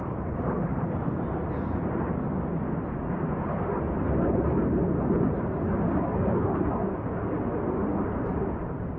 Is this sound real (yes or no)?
yes